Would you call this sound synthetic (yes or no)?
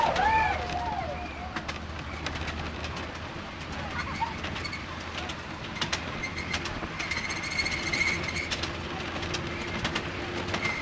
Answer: no